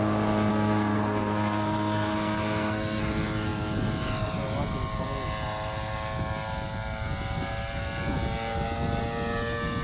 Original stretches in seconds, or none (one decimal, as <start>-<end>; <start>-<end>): 0.0-0.5; 3.0-9.8